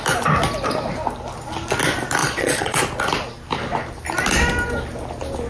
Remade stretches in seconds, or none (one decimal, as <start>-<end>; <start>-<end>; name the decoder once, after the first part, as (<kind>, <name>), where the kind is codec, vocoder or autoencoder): 2.2-2.8 (vocoder, Vocos)